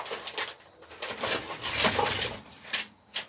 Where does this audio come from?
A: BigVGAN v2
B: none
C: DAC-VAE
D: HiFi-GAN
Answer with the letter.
B